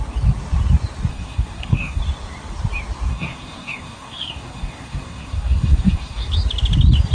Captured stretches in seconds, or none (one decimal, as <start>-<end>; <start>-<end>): 0.0-1.1; 2.0-3.1; 6.3-7.1